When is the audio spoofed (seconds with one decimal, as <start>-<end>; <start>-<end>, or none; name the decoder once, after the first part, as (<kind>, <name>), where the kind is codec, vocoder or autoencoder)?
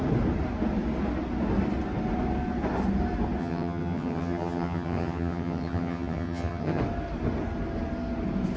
3.4-6.8 (vocoder, HiFi-GAN)